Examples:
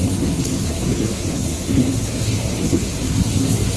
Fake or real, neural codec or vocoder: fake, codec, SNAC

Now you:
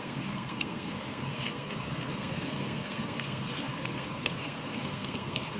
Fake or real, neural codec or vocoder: fake, codec, SNAC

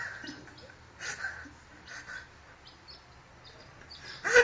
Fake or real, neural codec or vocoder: real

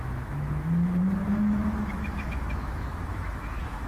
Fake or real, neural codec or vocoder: fake, autoencoder, DAC-VAE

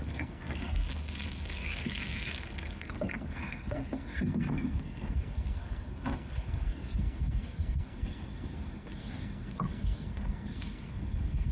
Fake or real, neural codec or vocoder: fake, codec, SNAC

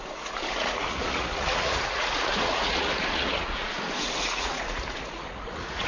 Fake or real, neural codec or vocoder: fake, vocoder, Vocos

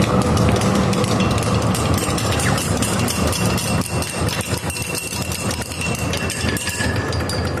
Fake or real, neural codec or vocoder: real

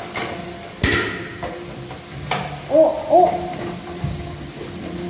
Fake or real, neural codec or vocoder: real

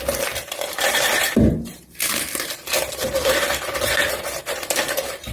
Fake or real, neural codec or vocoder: fake, vocoder, BigVGAN v2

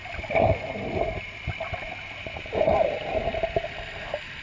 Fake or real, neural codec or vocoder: real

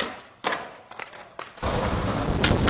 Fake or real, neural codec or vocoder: real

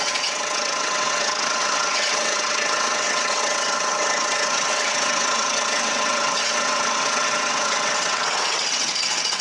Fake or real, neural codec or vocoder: fake, vocoder, WaveNeXt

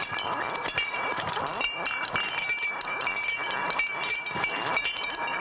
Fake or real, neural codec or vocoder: real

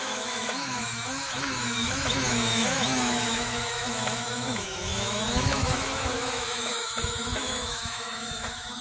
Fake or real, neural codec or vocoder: fake, autoencoder, DAC-VAE